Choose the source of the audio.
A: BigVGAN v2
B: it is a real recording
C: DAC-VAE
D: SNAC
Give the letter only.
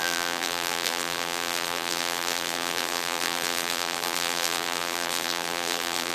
A